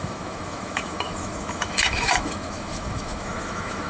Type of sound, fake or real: fake